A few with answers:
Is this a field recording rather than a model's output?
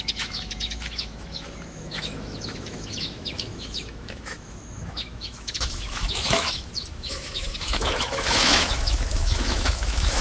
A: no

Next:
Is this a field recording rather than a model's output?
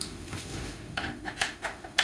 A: no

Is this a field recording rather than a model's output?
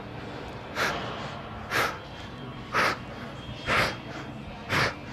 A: yes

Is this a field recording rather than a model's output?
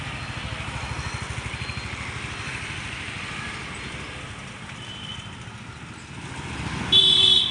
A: yes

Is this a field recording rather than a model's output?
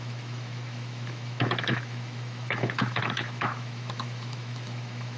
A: no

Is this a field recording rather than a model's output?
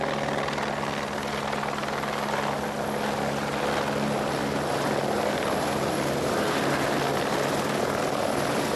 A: yes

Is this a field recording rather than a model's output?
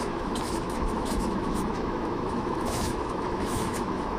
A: no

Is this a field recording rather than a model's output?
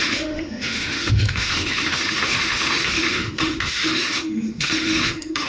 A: no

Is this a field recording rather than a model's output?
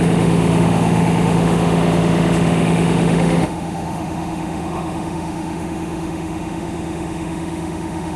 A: no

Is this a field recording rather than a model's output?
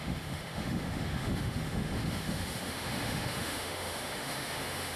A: no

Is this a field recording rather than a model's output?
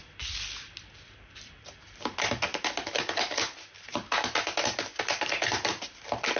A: yes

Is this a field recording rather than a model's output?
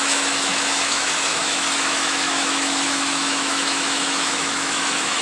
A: no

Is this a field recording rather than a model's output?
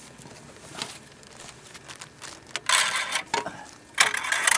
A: yes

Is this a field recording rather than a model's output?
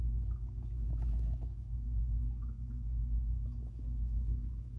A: no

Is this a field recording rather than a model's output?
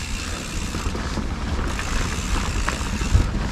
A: yes